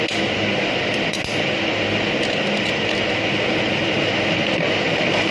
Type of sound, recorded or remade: recorded